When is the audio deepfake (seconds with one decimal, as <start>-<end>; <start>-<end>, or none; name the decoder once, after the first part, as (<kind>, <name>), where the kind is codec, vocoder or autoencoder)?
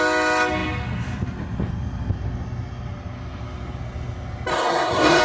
4.5-5.2 (codec, SNAC)